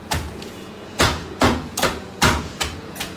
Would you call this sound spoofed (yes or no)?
yes